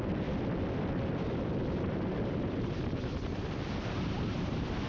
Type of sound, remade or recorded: recorded